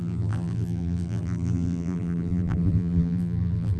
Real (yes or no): no